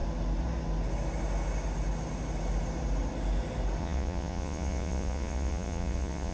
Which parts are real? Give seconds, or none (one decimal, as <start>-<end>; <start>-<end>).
0.0-3.8